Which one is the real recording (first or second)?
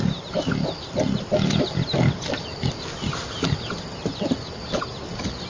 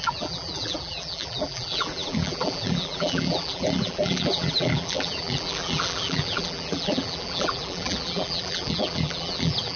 first